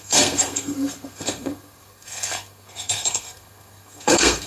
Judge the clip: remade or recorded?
remade